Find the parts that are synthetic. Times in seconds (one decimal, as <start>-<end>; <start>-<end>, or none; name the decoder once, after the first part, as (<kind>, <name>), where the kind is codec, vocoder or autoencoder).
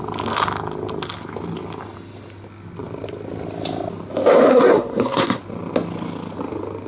4.5-5.4 (codec, SNAC)